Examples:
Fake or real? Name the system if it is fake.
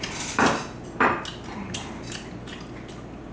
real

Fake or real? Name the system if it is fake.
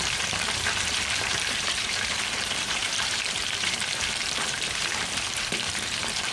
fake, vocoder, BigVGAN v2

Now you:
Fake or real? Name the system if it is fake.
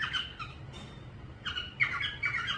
real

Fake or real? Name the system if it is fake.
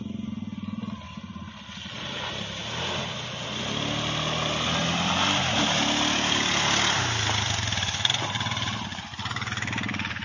real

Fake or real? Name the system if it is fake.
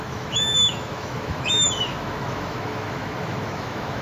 fake, autoencoder, DAC-VAE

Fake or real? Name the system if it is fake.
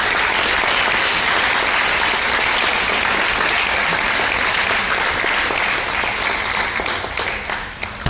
real